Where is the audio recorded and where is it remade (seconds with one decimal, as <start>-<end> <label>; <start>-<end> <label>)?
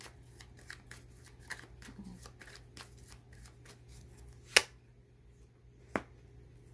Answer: 0.0-6.7 recorded